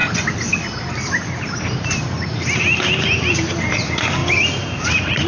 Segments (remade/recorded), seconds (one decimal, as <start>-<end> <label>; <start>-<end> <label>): 0.0-3.2 recorded; 3.2-4.2 remade; 4.2-4.8 recorded; 4.8-5.3 remade